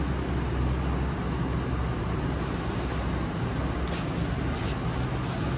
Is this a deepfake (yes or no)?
no